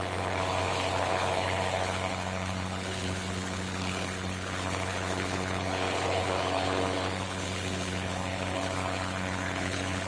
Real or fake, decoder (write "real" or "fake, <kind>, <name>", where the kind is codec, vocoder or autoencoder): fake, codec, HILCodec